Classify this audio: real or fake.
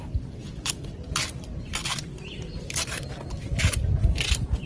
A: fake